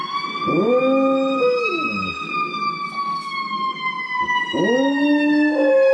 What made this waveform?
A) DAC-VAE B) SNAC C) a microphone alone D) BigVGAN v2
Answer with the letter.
C